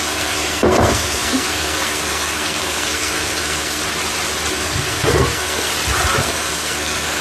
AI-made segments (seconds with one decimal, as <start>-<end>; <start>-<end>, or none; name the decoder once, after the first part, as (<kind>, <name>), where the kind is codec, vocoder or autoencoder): 0.0-3.8 (codec, SNAC); 4.5-5.7; 6.2-7.2